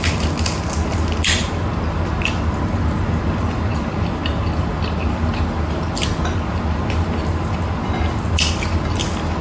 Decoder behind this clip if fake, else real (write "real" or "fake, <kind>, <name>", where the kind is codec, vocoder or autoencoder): real